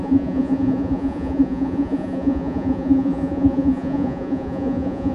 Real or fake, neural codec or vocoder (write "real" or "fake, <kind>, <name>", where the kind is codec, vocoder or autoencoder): fake, vocoder, Vocos